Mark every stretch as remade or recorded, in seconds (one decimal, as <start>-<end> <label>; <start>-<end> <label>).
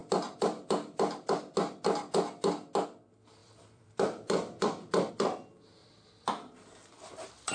0.0-1.4 remade; 1.4-3.4 recorded; 3.4-5.1 remade; 5.1-5.8 recorded; 5.8-6.3 remade; 6.3-7.5 recorded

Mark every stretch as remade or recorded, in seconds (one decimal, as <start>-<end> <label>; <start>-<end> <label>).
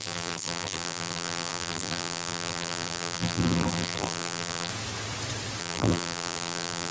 0.0-4.7 remade; 4.7-5.6 recorded; 5.6-6.9 remade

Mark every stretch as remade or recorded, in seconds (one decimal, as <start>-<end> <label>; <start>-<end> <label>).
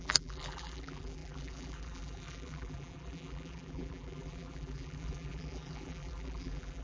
0.0-6.8 remade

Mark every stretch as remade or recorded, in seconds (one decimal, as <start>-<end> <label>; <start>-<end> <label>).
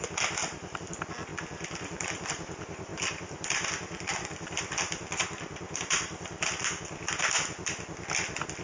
0.0-0.4 recorded; 0.4-0.9 remade; 0.9-1.3 recorded; 1.3-2.3 remade; 2.3-2.9 recorded; 2.9-7.2 remade; 7.2-8.6 recorded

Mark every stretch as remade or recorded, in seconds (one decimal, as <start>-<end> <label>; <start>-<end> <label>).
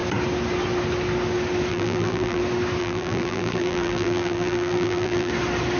0.0-1.7 recorded; 1.7-2.4 remade; 2.4-2.8 recorded; 2.8-5.3 remade; 5.3-5.8 recorded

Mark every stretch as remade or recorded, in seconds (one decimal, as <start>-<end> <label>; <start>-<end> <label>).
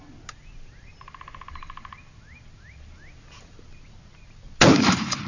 0.0-4.7 recorded; 4.7-5.3 remade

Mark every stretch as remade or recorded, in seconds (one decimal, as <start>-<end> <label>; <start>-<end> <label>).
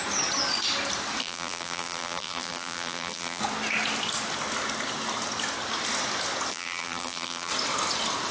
0.0-1.2 recorded; 1.2-3.4 remade; 3.4-6.5 recorded; 6.5-7.5 remade; 7.5-8.3 recorded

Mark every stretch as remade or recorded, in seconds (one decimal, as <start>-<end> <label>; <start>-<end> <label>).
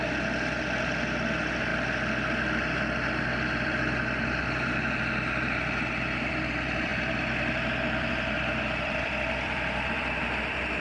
0.0-6.9 remade; 6.9-8.1 recorded; 8.1-10.8 remade